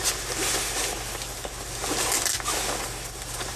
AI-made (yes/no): no